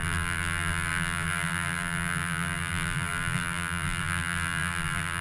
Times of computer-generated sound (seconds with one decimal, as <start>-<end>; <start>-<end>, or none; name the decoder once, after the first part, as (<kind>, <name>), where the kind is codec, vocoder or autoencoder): 0.0-5.2 (vocoder, BigVGAN v2)